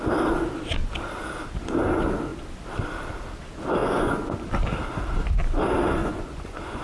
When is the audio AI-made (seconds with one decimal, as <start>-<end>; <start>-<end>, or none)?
3.8-4.4; 6.0-6.8